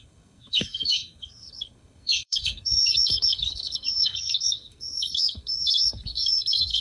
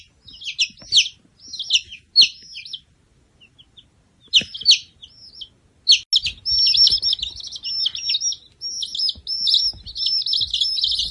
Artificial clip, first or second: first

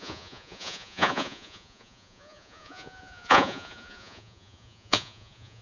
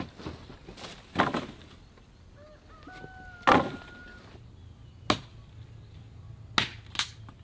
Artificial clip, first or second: first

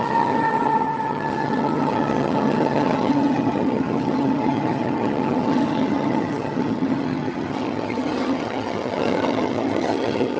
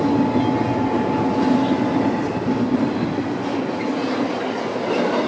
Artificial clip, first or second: first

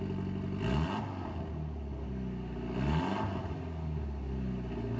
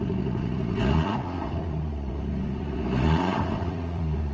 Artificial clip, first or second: second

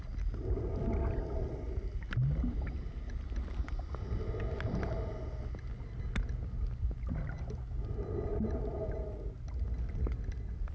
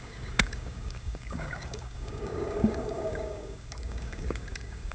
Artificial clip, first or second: second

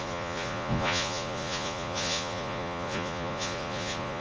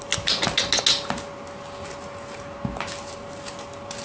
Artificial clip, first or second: first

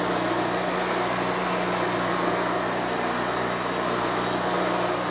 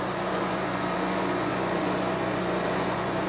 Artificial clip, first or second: second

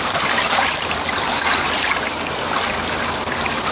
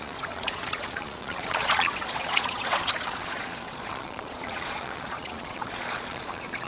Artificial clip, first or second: second